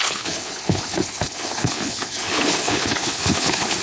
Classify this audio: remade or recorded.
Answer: remade